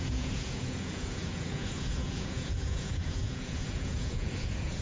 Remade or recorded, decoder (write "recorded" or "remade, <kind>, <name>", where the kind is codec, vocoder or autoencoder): remade, vocoder, Vocos